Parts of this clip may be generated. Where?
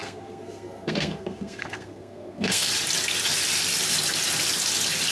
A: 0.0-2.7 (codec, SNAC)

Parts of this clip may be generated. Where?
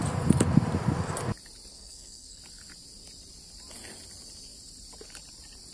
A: 1.7-2.4 (codec, SNAC)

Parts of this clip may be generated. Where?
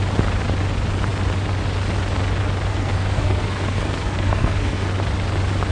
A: 2.7-4.9 (codec, SNAC)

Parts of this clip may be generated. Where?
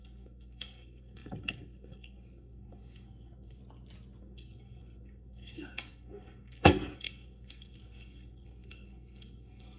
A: 0.0-3.6 (codec, SNAC); 4.2-9.8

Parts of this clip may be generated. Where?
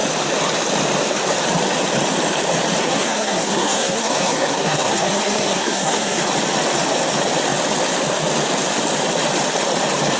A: 2.8-6.2 (codec, SNAC)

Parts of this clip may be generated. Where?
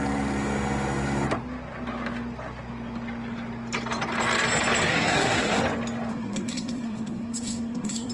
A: 4.9-5.6 (codec, SNAC); 6.1-8.1